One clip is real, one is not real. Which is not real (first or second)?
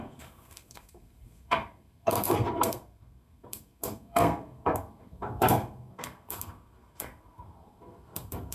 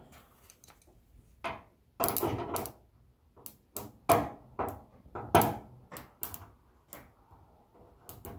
first